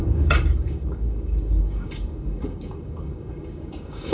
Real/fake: fake